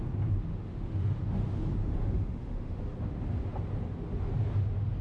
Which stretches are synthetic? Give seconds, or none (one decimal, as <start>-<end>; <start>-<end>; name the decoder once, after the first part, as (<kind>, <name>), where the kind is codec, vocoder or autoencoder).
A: 0.5-1.2 (autoencoder, DAC-VAE); 1.8-2.8